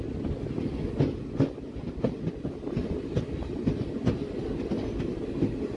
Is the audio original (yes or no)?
yes